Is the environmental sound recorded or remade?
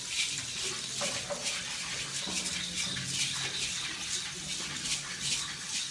recorded